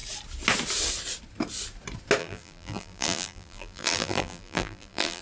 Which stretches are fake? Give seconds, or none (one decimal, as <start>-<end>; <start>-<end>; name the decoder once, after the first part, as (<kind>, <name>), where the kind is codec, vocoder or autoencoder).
2.2-5.2 (vocoder, BigVGAN v2)